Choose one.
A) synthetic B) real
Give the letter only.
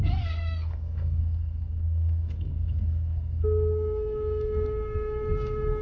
A